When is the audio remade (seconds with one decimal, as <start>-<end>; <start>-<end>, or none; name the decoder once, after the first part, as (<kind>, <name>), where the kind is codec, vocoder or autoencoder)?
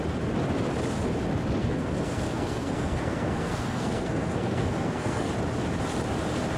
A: 1.6-5.3 (codec, SNAC)